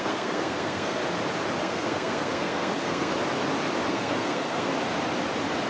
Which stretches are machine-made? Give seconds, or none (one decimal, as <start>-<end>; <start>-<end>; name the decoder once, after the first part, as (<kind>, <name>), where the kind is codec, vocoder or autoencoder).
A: 0.0-1.0 (codec, SNAC); 1.6-3.1; 3.9-4.7